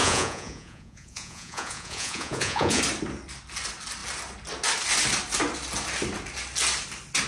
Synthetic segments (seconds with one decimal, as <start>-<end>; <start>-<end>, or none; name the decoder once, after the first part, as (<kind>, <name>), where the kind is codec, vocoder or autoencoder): 0.0-2.8 (vocoder, Vocos)